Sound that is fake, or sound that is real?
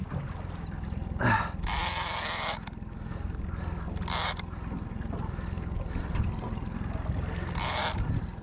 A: real